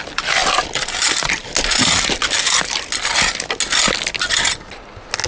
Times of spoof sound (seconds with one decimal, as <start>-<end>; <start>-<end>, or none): none